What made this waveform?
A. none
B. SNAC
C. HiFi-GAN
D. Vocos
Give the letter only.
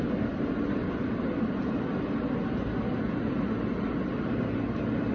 A